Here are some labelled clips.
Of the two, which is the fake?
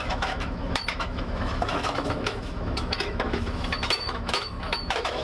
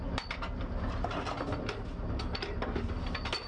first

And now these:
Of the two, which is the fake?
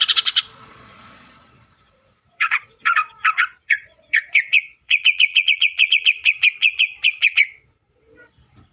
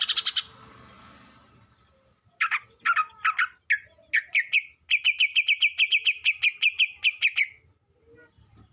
first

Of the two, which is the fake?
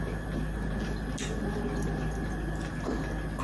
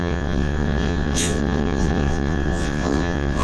second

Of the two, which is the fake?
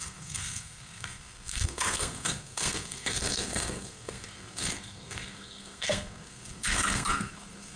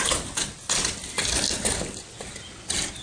first